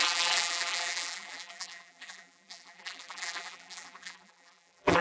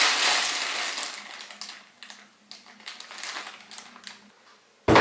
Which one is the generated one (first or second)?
first